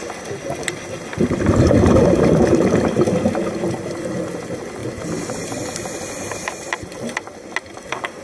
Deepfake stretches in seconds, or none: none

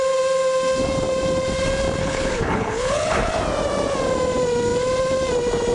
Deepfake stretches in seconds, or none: 2.0-3.3 (codec, HILCodec)

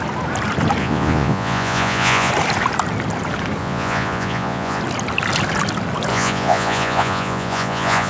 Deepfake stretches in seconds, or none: 0.8-2.3 (vocoder, Vocos); 3.6-4.8; 6.1-8.1